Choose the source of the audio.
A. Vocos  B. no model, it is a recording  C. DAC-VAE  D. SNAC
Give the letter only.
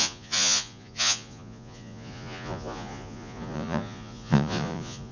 A